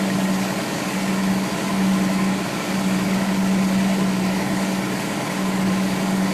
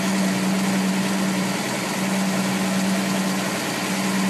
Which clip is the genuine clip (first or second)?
second